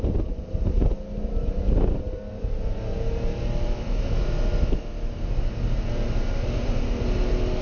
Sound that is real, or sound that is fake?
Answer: real